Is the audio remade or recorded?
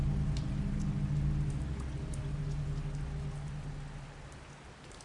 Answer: recorded